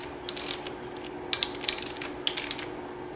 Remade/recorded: recorded